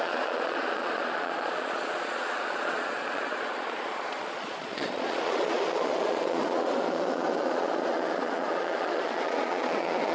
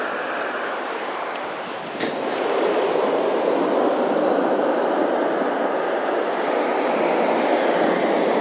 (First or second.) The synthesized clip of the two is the first